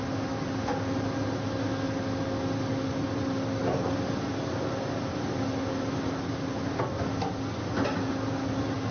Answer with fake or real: real